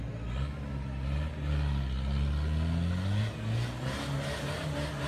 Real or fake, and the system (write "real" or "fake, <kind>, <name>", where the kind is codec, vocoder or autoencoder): real